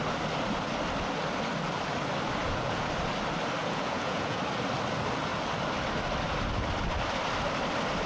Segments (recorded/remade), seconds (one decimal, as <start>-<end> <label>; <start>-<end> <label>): 0.0-2.4 recorded; 2.4-2.9 remade; 2.9-3.6 recorded; 3.6-4.4 remade; 4.4-8.1 recorded